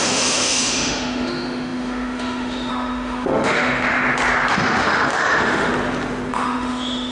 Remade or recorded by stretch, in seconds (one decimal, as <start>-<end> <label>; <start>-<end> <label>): 0.0-4.0 remade; 4.0-4.5 recorded; 4.5-5.7 remade; 5.7-6.3 recorded; 6.3-7.1 remade